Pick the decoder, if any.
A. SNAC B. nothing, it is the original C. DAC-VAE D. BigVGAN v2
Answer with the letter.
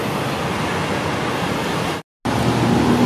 B